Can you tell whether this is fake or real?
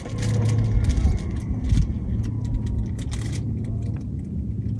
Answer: real